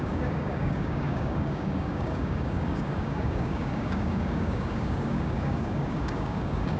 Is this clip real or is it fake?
fake